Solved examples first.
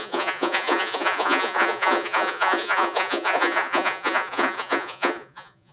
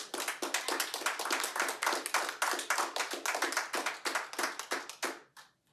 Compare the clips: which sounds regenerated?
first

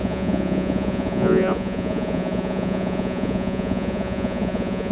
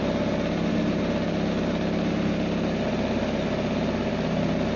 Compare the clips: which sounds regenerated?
first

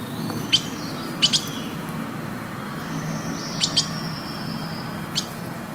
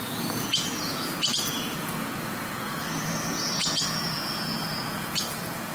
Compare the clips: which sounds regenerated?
second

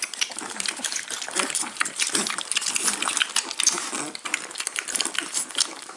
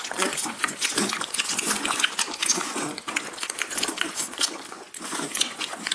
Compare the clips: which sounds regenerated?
second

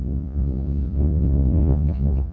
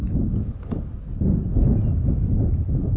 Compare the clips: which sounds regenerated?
first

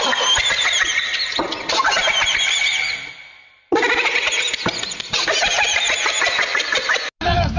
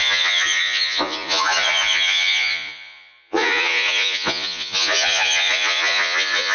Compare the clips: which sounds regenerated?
second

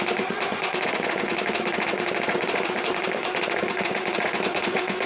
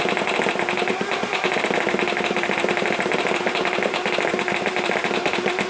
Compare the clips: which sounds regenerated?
first